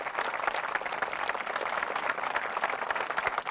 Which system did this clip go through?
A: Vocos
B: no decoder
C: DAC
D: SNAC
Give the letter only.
B